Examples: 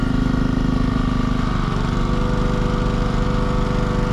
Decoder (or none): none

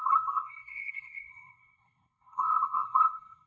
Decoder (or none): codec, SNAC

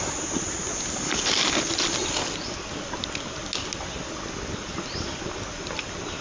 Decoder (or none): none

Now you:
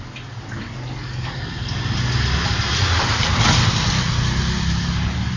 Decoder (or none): none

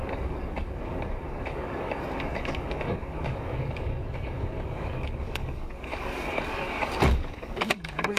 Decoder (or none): codec, DAC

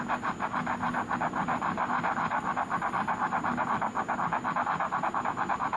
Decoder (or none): none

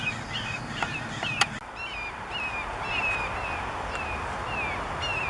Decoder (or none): none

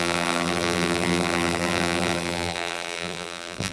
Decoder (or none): vocoder, BigVGAN v2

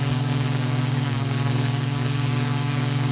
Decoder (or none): codec, DAC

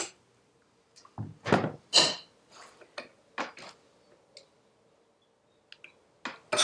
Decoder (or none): none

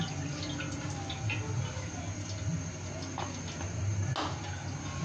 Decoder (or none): none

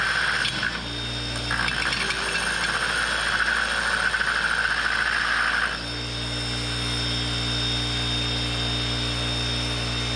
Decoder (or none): none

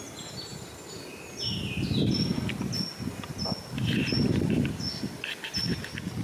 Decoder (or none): none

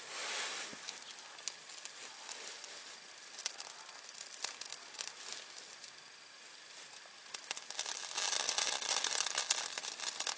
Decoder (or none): none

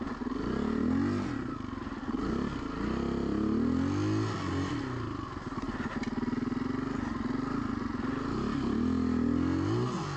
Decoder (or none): none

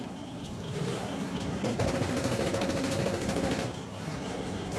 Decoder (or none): codec, SNAC